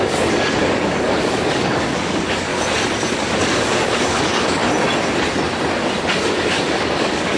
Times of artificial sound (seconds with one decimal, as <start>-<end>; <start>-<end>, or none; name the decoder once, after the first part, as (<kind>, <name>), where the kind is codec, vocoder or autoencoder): 0.0-2.5 (codec, DAC); 3.1-4.6; 6.1-7.4

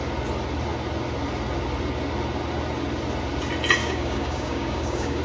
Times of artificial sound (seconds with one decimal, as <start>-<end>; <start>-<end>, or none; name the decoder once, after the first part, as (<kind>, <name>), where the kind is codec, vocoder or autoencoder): 3.8-5.2 (codec, DAC)

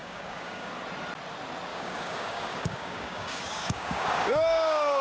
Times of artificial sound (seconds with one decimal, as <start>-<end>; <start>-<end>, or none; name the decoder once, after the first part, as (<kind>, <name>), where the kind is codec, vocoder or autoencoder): 0.0-0.7 (codec, DAC); 1.7-5.0

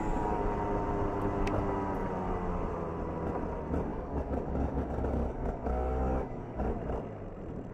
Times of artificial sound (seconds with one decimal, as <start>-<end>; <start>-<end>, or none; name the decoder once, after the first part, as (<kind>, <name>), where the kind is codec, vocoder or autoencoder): 3.9-6.7 (codec, DAC)

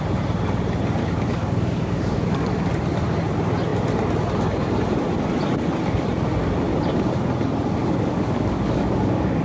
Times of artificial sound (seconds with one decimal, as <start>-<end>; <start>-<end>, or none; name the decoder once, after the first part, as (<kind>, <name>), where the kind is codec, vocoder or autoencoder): 1.0-2.7 (codec, DAC); 7.8-9.4

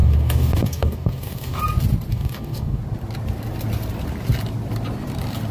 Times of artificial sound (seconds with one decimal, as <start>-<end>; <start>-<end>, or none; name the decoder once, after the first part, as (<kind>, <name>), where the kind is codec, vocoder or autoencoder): 0.0-1.6 (codec, DAC); 2.1-2.8

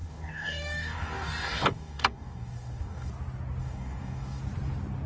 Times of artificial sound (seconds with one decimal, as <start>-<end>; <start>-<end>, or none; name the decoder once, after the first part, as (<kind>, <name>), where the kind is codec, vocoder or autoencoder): 0.0-3.1 (codec, DAC); 3.6-4.4

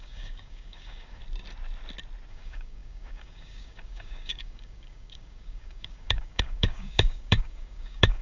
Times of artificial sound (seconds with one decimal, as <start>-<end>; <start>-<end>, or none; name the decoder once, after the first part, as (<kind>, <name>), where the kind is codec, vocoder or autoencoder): 0.0-1.2 (codec, DAC); 2.3-8.2